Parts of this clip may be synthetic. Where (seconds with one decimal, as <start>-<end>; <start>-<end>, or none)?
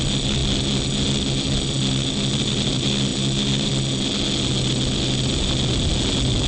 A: none